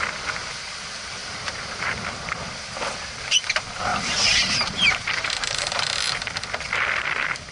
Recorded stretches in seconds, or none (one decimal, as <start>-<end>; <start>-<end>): 0.0-1.2; 2.0-3.9; 6.2-7.5